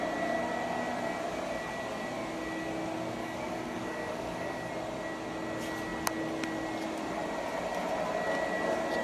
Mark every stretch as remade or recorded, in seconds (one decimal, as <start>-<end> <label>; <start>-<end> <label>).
0.0-3.2 recorded; 3.2-4.7 remade; 4.7-9.0 recorded